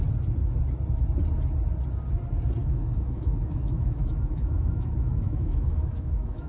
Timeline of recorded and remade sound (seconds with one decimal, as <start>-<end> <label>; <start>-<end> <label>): 0.0-2.6 recorded; 2.6-6.5 remade

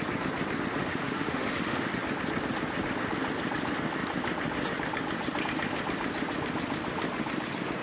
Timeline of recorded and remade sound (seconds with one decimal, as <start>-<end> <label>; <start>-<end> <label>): 0.0-0.8 recorded; 0.8-1.9 remade; 1.9-7.8 recorded

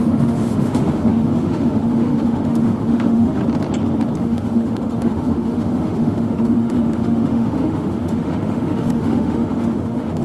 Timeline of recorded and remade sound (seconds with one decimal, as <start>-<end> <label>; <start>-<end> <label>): 0.0-3.4 remade; 3.4-4.2 recorded; 4.2-10.2 remade

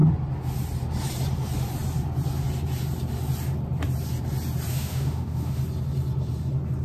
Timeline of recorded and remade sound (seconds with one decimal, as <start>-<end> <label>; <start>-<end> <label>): 0.0-4.7 recorded; 4.7-5.6 remade; 5.6-6.8 recorded

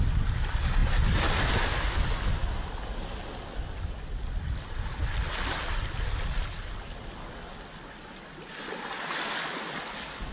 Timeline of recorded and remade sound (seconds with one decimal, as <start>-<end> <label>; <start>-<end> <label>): 0.0-10.3 recorded

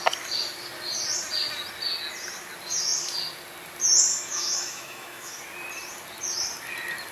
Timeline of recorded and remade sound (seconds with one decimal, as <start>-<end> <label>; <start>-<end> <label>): 0.0-4.1 recorded; 4.1-5.4 remade; 5.4-7.1 recorded

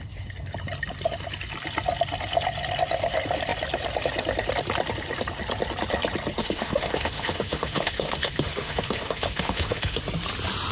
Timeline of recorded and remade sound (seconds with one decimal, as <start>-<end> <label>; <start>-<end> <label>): 0.0-6.4 recorded; 6.4-10.0 remade; 10.0-10.7 recorded